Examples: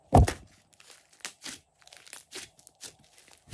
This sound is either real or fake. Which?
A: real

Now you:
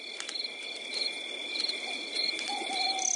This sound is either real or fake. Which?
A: real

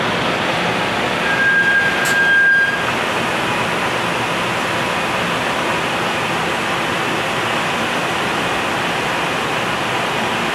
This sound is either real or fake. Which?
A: real